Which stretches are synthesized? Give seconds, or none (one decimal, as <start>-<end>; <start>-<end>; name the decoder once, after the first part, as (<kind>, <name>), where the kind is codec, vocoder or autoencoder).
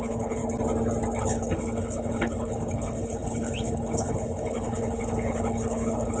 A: 0.0-0.4 (codec, HILCodec); 1.2-6.2